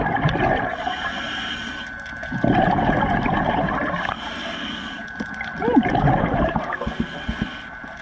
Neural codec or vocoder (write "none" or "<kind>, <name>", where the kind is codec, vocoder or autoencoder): none